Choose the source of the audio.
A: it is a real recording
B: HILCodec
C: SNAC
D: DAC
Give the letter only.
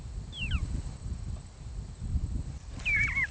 A